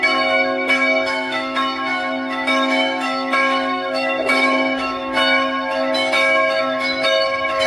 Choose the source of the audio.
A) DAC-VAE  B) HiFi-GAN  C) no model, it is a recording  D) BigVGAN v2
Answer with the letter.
A